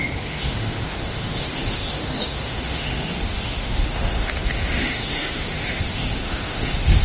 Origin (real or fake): fake